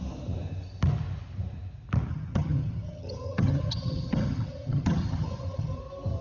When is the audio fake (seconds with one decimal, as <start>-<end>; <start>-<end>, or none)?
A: 2.1-5.8